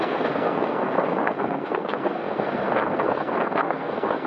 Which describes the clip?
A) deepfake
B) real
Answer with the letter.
A